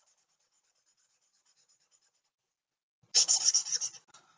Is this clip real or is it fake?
real